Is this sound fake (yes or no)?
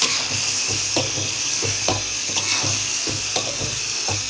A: yes